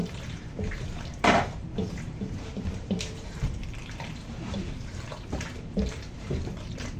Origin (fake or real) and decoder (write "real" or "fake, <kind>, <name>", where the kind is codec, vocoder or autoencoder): fake, vocoder, BigVGAN v2